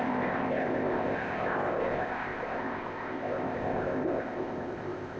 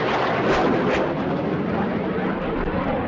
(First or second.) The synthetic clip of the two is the first